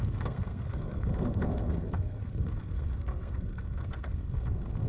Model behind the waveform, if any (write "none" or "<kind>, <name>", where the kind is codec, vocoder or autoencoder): codec, SNAC